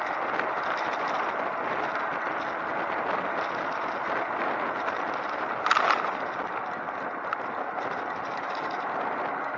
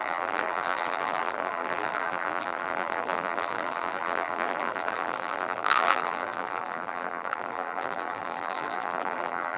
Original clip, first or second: first